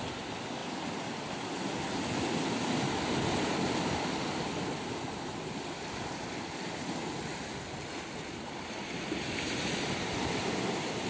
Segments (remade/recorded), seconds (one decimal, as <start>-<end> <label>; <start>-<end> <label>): 0.0-11.1 recorded